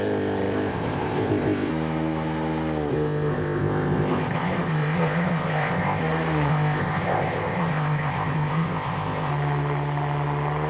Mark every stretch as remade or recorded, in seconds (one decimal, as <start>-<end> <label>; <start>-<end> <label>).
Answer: 0.0-1.7 remade; 1.7-2.9 recorded; 2.9-6.0 remade; 6.0-6.5 recorded; 6.5-9.3 remade; 9.3-10.7 recorded